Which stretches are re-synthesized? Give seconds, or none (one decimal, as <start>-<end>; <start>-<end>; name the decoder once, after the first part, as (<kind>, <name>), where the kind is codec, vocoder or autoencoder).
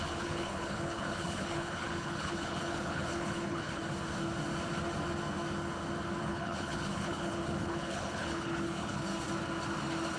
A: 0.0-3.8 (codec, HILCodec); 6.2-9.1